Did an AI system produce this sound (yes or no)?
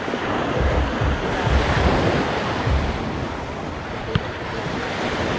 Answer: no